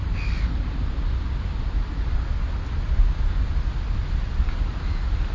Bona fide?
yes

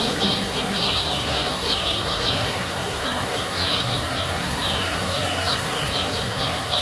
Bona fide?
no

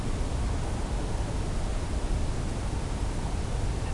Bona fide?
yes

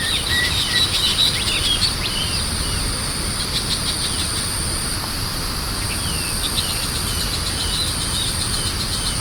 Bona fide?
no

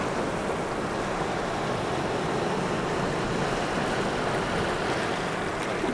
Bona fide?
yes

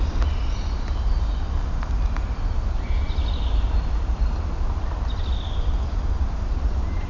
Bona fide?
yes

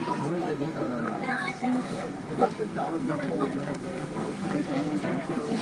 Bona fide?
no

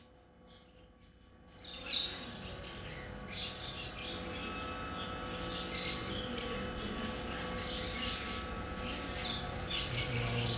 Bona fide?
yes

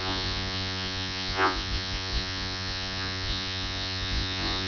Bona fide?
no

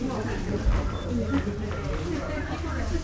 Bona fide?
yes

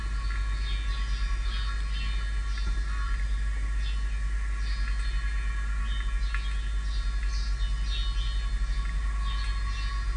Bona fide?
yes